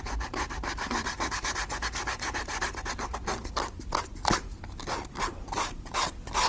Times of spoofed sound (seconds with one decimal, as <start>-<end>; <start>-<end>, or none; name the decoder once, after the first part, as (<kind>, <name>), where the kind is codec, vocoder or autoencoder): 0.0-3.1 (vocoder, BigVGAN v2); 4.1-4.5